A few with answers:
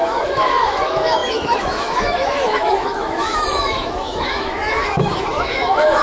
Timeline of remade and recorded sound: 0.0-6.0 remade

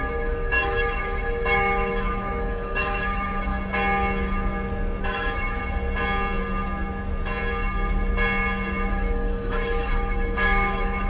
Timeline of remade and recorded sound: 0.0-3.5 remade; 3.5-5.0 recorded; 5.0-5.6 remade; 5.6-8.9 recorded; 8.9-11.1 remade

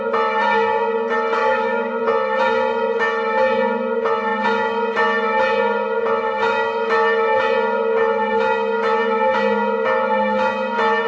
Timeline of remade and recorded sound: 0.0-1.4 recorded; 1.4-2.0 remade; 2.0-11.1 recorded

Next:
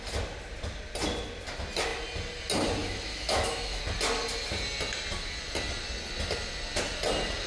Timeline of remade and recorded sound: 0.0-2.8 recorded; 2.8-3.8 remade; 3.8-7.5 recorded